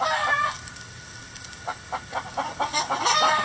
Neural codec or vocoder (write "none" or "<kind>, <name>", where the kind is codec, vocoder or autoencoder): none